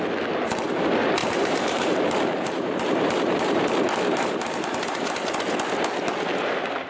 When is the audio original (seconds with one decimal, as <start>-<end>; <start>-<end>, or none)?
0.0-1.2; 5.1-6.9